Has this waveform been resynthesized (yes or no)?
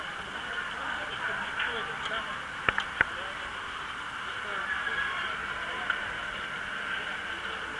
no